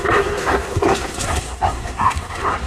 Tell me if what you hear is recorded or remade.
remade